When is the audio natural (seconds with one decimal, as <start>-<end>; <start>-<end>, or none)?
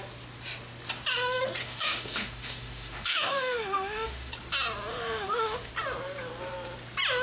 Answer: 0.0-1.6; 4.3-4.9; 5.7-7.2